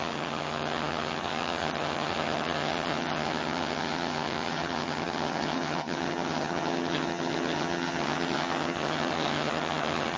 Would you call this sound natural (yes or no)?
no